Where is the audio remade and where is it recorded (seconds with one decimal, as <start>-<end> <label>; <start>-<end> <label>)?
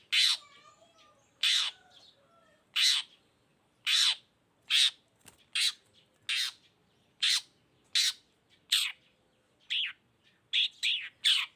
0.0-0.8 recorded; 0.8-1.9 remade; 1.9-3.5 recorded; 3.5-4.2 remade; 4.2-6.8 recorded; 6.8-7.4 remade; 7.4-11.6 recorded